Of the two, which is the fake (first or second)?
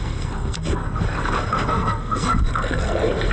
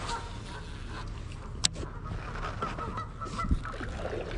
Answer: first